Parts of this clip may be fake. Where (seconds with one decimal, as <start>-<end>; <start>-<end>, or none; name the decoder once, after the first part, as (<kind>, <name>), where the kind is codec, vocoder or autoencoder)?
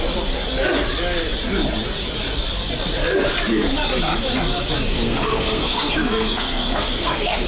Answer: 4.9-7.5 (codec, SNAC)